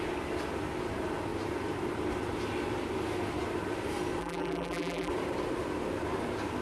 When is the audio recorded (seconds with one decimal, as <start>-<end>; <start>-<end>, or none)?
0.0-4.2; 5.1-6.6